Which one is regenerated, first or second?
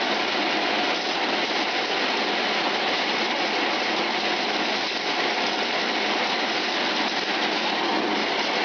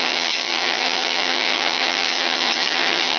second